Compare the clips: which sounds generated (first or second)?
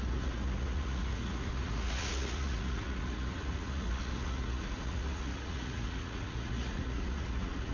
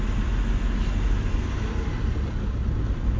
first